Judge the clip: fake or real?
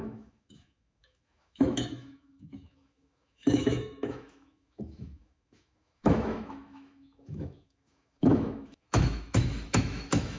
fake